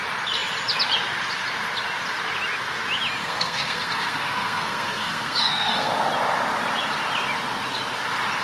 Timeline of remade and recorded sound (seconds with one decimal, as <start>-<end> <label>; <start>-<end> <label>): 0.0-3.2 recorded; 3.2-5.9 remade; 5.9-8.4 recorded